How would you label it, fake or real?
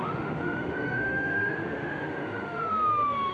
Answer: fake